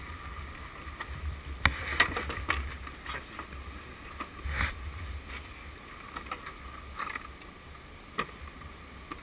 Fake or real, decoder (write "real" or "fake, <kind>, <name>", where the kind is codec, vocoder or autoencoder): real